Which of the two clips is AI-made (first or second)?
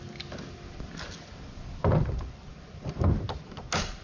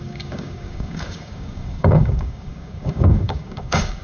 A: second